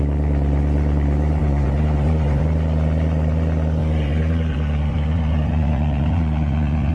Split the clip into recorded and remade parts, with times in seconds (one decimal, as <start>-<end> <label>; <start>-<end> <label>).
0.0-1.4 recorded; 1.4-2.4 remade; 2.4-3.8 recorded; 3.8-6.9 remade

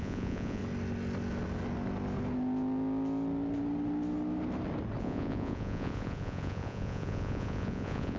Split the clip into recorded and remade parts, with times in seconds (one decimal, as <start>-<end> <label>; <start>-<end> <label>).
0.0-0.6 remade; 0.6-5.0 recorded; 5.0-8.2 remade

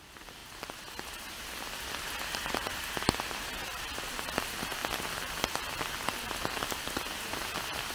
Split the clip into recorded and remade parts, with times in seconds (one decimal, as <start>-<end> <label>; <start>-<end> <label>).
0.0-7.9 recorded

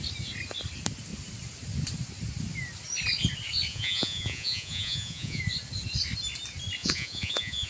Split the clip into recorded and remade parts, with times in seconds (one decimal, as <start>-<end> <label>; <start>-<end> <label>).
0.0-3.7 recorded; 3.7-5.4 remade; 5.4-6.8 recorded; 6.8-7.7 remade

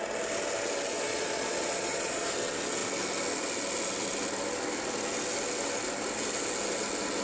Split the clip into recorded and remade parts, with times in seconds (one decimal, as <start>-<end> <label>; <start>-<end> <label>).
0.0-1.1 recorded; 1.1-2.3 remade; 2.3-7.2 recorded

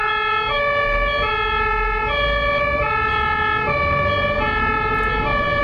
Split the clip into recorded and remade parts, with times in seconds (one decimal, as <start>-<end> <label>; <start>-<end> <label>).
0.0-5.6 recorded

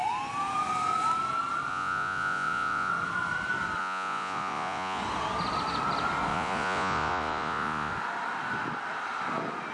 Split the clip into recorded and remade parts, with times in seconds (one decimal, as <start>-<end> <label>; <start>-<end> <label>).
0.0-1.7 recorded; 1.7-2.9 remade; 2.9-3.8 recorded; 3.8-5.0 remade; 5.0-6.3 recorded; 6.3-7.9 remade; 7.9-9.7 recorded